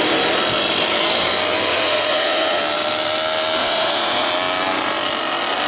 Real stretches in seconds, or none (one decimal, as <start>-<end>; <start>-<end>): 0.0-1.7; 2.6-3.6; 4.3-5.7